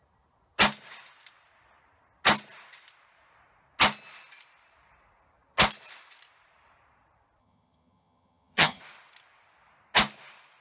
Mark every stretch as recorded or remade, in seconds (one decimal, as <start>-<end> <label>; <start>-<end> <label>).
0.0-7.4 recorded; 7.4-8.8 remade; 8.8-10.6 recorded